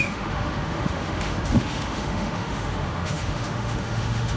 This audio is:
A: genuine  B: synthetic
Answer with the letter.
B